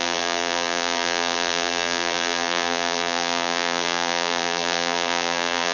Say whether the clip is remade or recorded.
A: remade